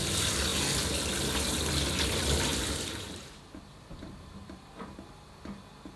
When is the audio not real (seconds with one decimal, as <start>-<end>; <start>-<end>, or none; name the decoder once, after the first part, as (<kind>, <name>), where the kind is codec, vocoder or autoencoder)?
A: 2.5-5.3 (vocoder, BigVGAN v2)